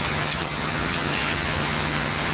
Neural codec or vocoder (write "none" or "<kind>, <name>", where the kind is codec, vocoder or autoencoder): vocoder, HiFi-GAN